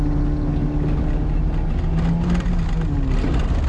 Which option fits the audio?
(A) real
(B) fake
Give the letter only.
A